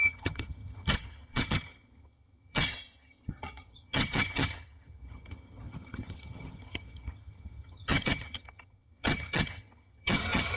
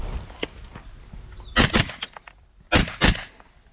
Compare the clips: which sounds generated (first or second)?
first